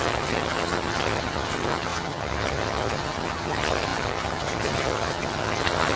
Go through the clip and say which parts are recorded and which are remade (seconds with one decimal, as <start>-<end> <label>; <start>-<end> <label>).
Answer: 0.0-6.0 remade